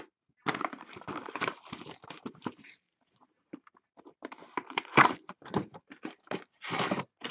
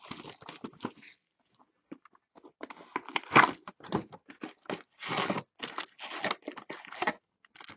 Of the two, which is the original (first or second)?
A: second